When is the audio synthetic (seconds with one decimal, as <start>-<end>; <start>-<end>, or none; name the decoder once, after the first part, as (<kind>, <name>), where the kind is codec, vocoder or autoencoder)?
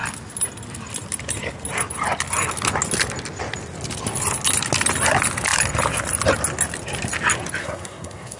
7.6-8.4 (codec, SNAC)